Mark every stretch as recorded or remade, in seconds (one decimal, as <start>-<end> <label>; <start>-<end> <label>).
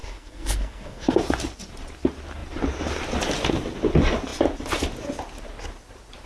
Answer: 0.0-1.2 remade; 1.2-6.3 recorded